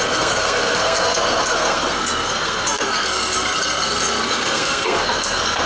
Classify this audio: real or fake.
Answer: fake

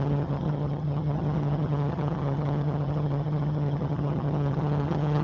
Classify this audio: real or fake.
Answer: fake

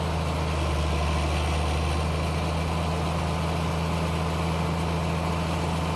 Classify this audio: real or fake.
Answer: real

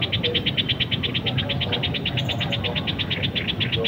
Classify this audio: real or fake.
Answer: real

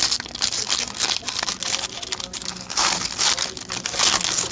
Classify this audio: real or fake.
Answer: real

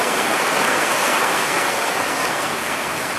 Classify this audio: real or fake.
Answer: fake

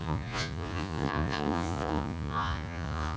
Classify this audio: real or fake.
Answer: fake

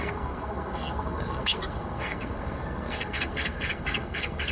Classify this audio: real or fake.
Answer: fake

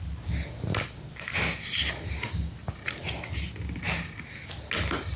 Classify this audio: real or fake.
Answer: real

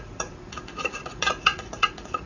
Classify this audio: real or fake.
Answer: fake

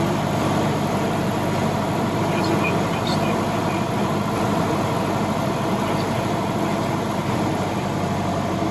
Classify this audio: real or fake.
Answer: fake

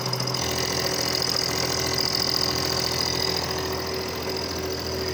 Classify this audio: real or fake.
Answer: real